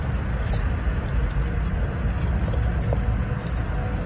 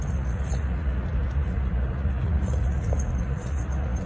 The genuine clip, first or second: first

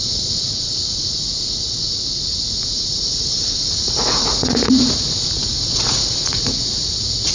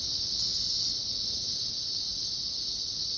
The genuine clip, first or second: second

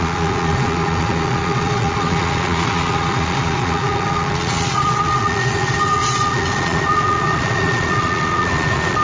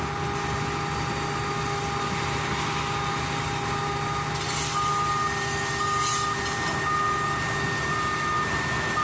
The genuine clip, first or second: second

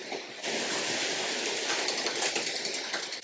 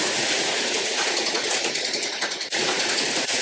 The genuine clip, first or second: first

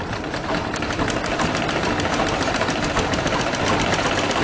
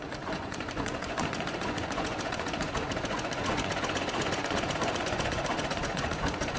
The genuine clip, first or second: first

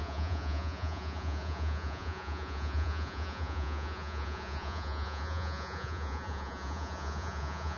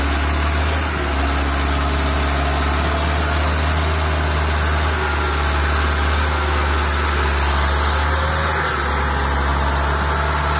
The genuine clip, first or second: second